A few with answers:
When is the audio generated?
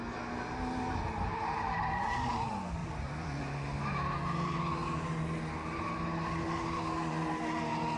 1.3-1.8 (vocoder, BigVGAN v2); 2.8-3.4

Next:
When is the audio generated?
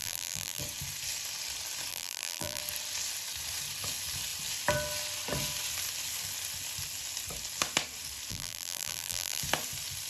0.0-0.6 (vocoder, BigVGAN v2); 1.9-2.6; 8.3-9.4